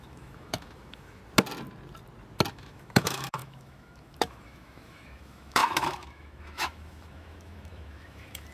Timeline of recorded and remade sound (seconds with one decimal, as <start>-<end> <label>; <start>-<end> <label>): 0.0-1.2 remade; 1.2-2.5 recorded; 2.5-8.5 remade